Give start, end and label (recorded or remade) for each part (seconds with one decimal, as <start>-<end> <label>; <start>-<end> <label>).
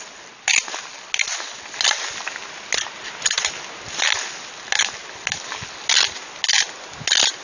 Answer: 0.0-7.4 recorded